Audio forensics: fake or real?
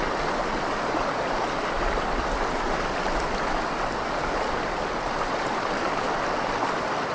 real